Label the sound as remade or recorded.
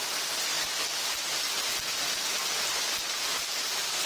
recorded